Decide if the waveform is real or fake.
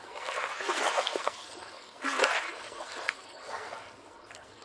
fake